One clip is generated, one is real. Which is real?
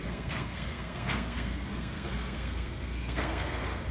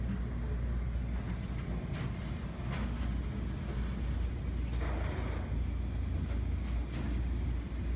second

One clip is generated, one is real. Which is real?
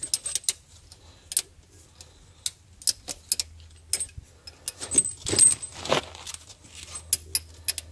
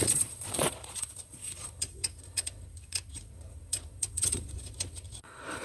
first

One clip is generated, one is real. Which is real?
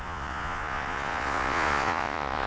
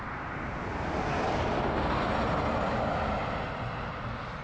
second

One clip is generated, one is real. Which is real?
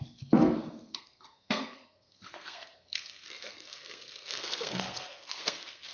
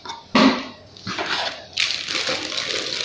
second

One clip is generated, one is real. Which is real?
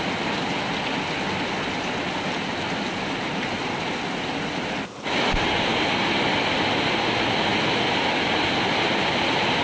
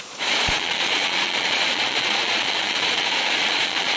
first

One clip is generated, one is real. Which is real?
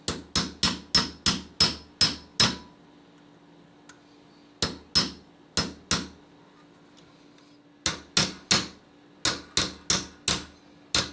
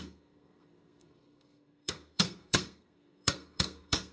first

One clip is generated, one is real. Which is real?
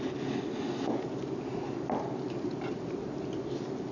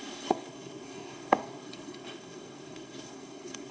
first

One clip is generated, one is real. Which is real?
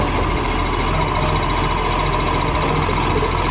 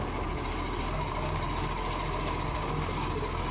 first